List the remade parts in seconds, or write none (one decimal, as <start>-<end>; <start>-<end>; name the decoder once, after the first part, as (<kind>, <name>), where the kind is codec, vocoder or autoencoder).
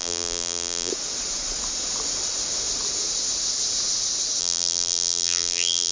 0.0-0.9 (vocoder, BigVGAN v2); 4.4-5.9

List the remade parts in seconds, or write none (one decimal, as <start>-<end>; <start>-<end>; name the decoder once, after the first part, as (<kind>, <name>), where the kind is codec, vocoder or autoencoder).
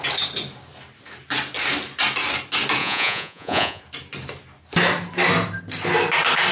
2.8-3.8 (vocoder, Vocos)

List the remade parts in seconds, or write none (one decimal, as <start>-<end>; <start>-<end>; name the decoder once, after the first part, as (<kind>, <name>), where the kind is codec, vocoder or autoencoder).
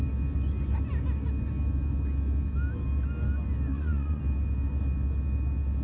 3.7-4.2 (vocoder, Vocos)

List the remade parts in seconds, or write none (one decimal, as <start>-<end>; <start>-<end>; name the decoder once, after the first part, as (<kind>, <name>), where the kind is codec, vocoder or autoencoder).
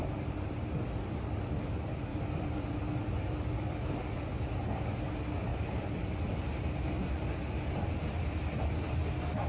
2.1-5.1 (vocoder, BigVGAN v2); 5.5-6.7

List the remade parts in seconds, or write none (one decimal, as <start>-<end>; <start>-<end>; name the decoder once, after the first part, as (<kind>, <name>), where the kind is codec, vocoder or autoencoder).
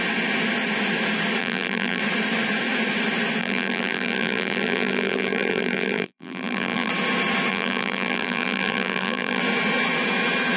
1.4-2.0 (vocoder, BigVGAN v2); 3.4-6.9; 7.5-9.4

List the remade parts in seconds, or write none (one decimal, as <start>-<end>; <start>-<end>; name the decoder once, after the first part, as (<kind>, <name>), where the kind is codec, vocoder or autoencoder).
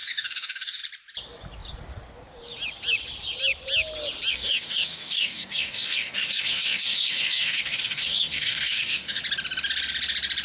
0.0-0.8 (codec, DAC); 4.3-9.2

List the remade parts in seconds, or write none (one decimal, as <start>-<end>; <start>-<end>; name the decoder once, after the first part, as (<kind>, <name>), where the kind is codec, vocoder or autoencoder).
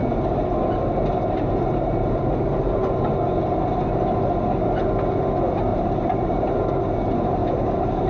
0.0-3.1 (vocoder, BigVGAN v2); 5.7-6.6; 7.4-8.1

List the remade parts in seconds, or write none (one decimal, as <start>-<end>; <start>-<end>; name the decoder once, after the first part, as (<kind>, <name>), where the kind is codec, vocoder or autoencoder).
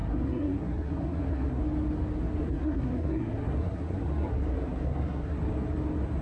0.0-1.6 (codec, SNAC); 2.4-5.4